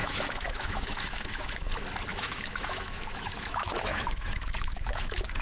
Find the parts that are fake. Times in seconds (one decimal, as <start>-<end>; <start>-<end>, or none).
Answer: 0.0-1.7; 2.1-5.4